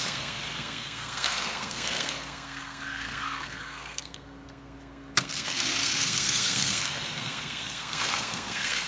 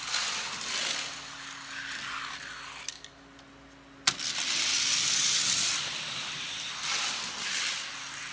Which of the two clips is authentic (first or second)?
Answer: second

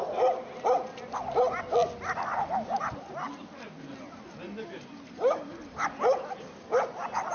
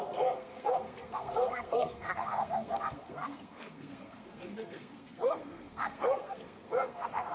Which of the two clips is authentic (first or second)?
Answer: first